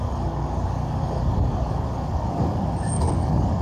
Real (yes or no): no